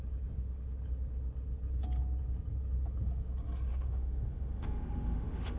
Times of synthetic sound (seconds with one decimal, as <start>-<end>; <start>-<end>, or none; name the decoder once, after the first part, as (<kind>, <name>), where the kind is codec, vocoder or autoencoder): 3.7-5.6 (autoencoder, DAC-VAE)